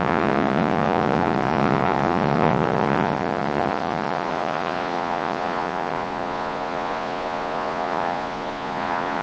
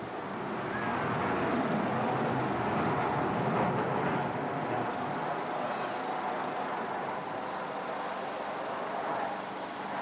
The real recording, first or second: second